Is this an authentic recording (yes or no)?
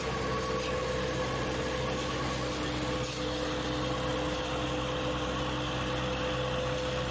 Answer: yes